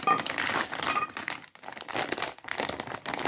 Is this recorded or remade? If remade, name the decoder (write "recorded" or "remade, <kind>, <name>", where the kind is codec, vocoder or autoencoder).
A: remade, vocoder, BigVGAN v2